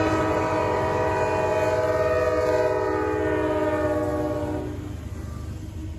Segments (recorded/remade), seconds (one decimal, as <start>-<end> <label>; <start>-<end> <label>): 0.0-6.0 recorded